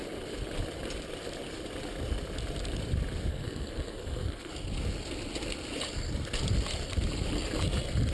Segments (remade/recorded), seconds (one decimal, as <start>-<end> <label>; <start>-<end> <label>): 0.0-3.3 recorded; 3.3-4.5 remade; 4.5-8.1 recorded